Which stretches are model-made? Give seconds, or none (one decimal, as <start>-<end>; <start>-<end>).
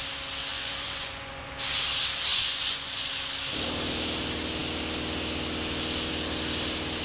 0.5-1.5; 2.3-3.1